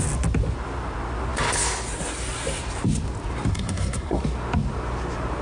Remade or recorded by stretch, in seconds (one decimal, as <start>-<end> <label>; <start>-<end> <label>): 0.0-3.5 recorded; 3.5-4.2 remade; 4.2-5.4 recorded